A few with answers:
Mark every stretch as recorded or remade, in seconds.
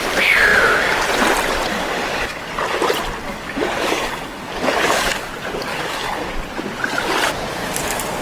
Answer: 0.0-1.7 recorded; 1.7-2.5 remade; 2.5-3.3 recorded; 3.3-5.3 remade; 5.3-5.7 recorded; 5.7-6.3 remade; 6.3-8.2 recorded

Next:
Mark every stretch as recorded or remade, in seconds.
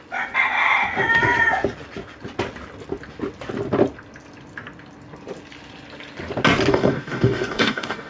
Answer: 0.0-6.7 recorded; 6.7-8.1 remade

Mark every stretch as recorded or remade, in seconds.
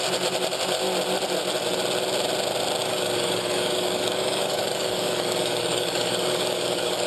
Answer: 0.0-2.8 recorded; 2.8-7.1 remade